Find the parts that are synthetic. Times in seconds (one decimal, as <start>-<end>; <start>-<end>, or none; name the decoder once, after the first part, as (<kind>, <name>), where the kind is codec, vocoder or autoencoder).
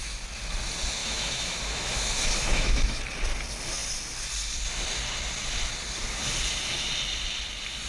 1.0-3.0 (autoencoder, DAC-VAE)